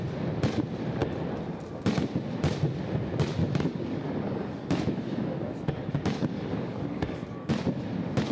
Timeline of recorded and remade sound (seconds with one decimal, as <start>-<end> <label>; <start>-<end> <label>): 0.0-3.4 recorded; 3.4-7.5 remade; 7.5-8.3 recorded